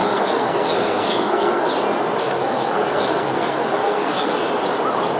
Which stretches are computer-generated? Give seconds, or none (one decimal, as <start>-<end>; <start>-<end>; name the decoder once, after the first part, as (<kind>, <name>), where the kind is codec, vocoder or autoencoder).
0.0-1.7 (codec, SNAC); 2.2-4.4